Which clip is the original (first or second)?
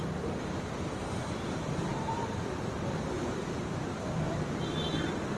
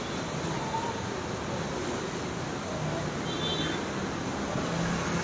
second